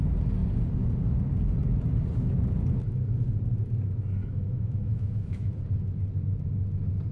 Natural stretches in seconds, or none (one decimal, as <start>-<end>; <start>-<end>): 0.0-4.2; 5.5-7.1